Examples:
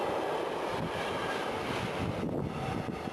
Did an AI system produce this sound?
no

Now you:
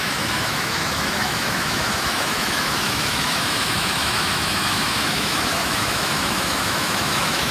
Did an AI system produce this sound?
yes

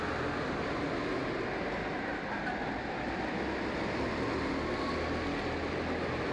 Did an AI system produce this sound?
no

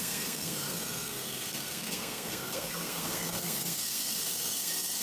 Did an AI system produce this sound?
yes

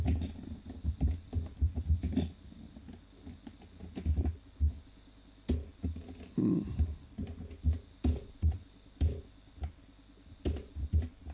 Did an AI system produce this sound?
no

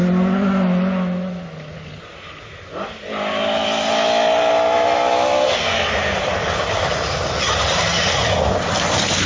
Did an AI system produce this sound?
no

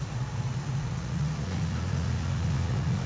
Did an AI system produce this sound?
yes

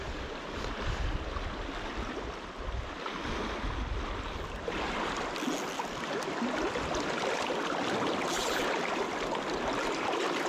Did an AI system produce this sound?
no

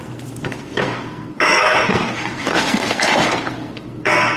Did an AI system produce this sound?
yes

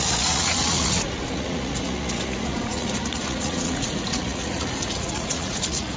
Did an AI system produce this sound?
yes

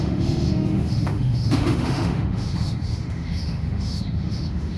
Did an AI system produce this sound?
yes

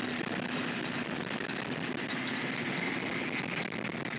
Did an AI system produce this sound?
no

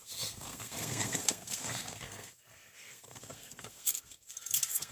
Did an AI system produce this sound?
yes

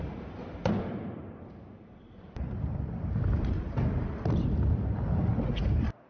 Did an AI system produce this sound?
no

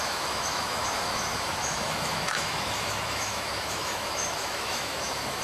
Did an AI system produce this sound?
yes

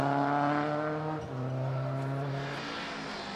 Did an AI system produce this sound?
no